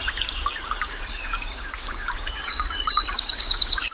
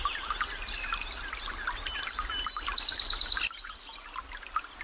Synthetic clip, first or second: first